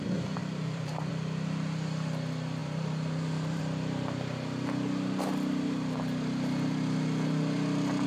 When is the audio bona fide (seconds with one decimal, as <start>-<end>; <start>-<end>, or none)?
0.0-0.4; 1.1-2.6; 3.6-8.1